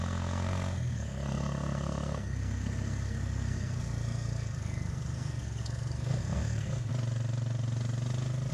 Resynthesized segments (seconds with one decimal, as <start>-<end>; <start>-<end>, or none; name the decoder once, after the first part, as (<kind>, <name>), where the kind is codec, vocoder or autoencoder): 0.0-6.9 (codec, SNAC)